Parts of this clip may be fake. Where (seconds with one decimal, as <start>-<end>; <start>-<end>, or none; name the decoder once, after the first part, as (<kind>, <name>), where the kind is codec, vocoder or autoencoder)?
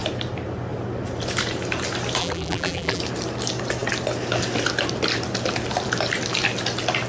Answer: 2.2-3.0 (vocoder, BigVGAN v2)